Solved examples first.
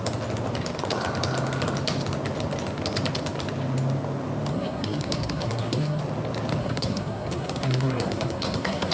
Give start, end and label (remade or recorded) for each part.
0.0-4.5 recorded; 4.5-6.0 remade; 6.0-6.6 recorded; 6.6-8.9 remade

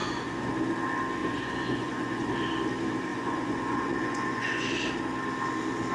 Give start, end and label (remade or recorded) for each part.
0.0-0.5 remade; 0.5-1.2 recorded; 1.2-2.3 remade; 2.3-3.1 recorded; 3.1-4.6 remade; 4.6-5.9 recorded

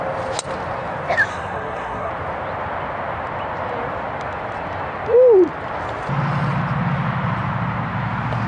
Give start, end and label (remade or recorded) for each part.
0.0-1.3 recorded; 1.3-2.1 remade; 2.1-8.5 recorded

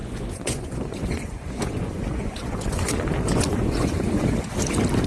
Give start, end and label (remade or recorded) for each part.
0.0-2.9 remade; 2.9-3.3 recorded; 3.3-4.2 remade; 4.2-5.1 recorded

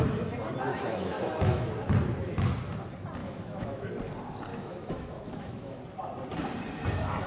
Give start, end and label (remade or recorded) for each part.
0.0-0.7 recorded; 0.7-1.7 remade; 1.7-3.2 recorded; 3.2-3.9 remade; 3.9-4.5 recorded; 4.5-5.8 remade; 5.8-7.3 recorded